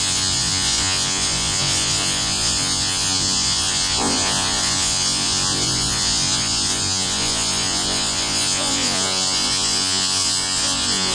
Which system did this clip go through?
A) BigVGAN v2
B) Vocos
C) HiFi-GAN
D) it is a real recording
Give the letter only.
B